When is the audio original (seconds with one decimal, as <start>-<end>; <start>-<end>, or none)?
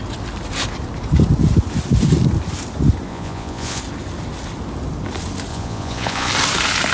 0.0-3.1; 3.8-5.5; 6.3-6.9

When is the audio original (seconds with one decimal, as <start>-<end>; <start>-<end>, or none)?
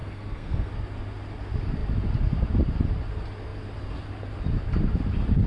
0.7-5.5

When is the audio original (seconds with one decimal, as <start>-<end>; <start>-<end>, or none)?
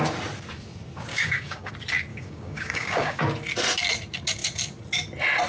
0.0-1.1; 1.7-2.1; 3.2-5.5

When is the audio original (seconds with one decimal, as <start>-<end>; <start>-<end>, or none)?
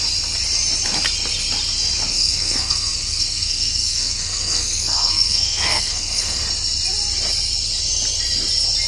0.0-2.1; 6.4-8.9